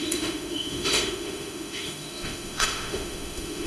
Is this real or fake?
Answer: fake